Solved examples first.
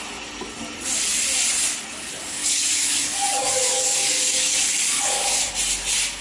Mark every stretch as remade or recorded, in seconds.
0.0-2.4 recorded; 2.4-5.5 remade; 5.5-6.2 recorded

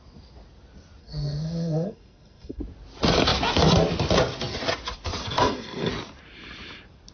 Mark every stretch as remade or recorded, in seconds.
0.0-1.0 recorded; 1.0-2.6 remade; 2.6-5.2 recorded; 5.2-5.9 remade; 5.9-7.1 recorded

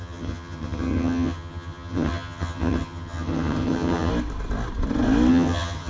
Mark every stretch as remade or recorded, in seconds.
0.0-4.1 remade; 4.1-5.3 recorded; 5.3-5.9 remade

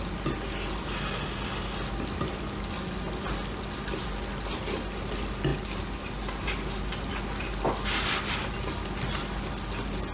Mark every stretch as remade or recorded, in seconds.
0.0-10.1 recorded

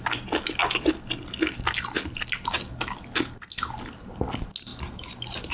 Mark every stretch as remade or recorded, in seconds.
0.0-5.5 recorded

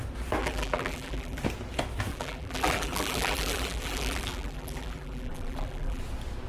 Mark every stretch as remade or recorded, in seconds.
0.0-0.4 recorded; 0.4-1.4 remade; 1.4-2.1 recorded; 2.1-6.0 remade; 6.0-6.5 recorded